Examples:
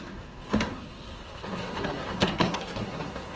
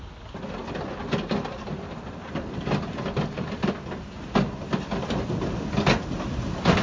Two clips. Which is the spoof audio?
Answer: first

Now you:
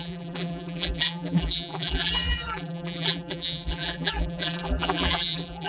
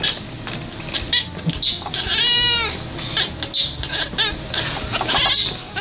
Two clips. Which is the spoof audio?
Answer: first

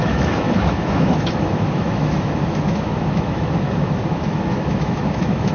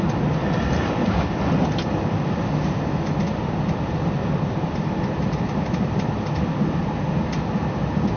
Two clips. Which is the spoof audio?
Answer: first